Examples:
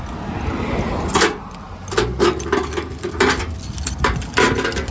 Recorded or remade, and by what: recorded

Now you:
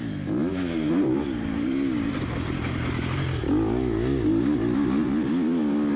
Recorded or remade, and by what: recorded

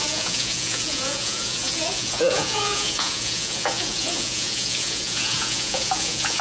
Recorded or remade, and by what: remade, vocoder, Vocos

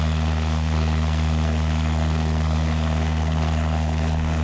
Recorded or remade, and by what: remade, codec, SNAC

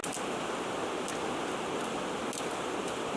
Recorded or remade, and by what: recorded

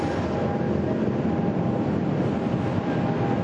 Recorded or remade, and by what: remade, vocoder, BigVGAN v2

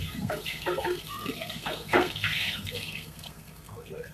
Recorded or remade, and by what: remade, codec, SNAC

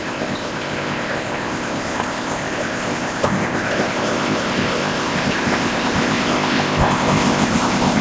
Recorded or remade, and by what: remade, codec, ZipCodec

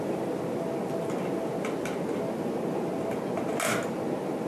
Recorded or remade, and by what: recorded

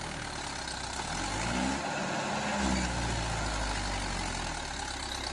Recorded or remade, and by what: recorded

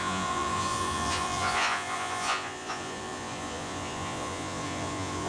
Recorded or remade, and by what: remade, vocoder, Vocos